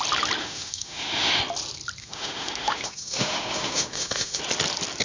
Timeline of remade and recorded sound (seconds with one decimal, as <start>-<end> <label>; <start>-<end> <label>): 0.0-0.4 recorded; 0.4-1.4 remade; 1.4-2.0 recorded; 2.0-4.4 remade; 4.4-5.0 recorded